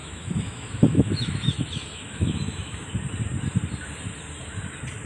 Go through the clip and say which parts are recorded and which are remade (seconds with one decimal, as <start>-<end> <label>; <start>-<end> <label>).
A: 0.0-2.9 remade; 2.9-5.1 recorded